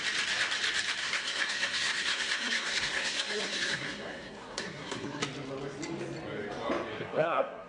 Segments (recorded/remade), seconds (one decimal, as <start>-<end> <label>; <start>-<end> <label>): 0.0-1.0 recorded; 1.0-5.2 remade; 5.2-6.9 recorded; 6.9-7.7 remade